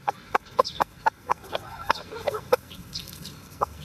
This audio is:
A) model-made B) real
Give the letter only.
A